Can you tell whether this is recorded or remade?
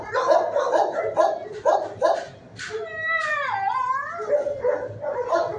recorded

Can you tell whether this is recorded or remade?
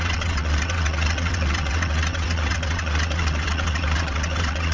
remade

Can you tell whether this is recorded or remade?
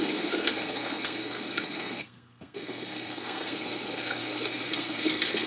remade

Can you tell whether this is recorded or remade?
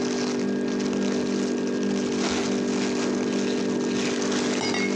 recorded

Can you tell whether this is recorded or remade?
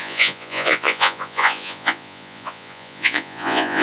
remade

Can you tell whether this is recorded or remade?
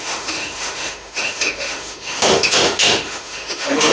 remade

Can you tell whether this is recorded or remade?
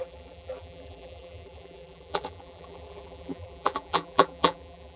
remade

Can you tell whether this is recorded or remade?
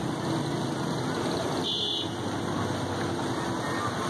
recorded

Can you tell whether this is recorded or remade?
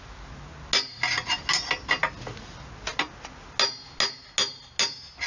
recorded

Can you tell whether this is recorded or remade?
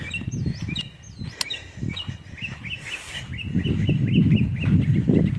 recorded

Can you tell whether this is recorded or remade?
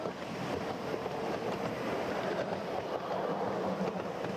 recorded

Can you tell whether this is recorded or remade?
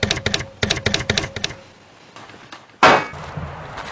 recorded